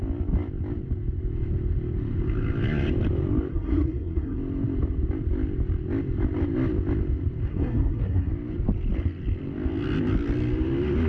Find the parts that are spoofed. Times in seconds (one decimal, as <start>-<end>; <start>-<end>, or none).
3.5-4.4; 7.5-8.3